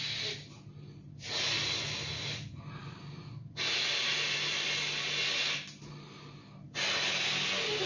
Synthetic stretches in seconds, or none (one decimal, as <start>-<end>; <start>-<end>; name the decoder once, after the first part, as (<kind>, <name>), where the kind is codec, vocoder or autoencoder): none